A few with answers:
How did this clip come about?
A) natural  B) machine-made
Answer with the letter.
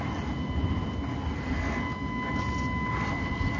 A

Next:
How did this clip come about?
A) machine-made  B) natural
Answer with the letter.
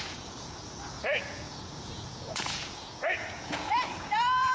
A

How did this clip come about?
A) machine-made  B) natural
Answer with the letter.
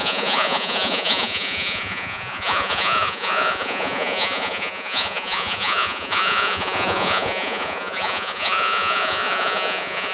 A